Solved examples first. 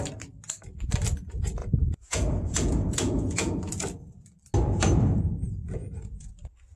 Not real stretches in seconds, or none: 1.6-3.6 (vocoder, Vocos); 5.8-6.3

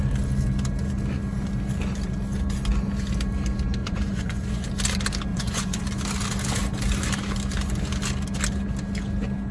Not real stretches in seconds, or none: 3.8-4.7 (vocoder, Vocos); 5.3-5.8

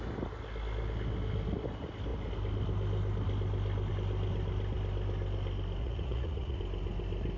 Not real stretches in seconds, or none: 5.8-6.6 (vocoder, Vocos)

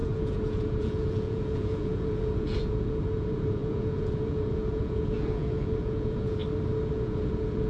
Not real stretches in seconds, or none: 0.0-6.4 (vocoder, Vocos); 6.9-7.7

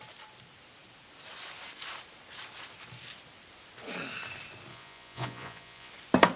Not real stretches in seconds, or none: 4.7-5.9 (vocoder, Vocos)